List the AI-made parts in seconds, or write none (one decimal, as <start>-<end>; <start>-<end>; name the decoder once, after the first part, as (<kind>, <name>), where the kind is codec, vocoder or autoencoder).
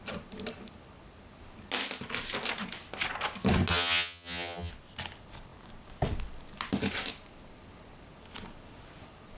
3.7-4.7 (vocoder, HiFi-GAN)